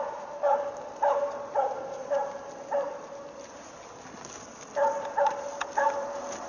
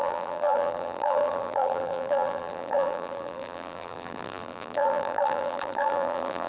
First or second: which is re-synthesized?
second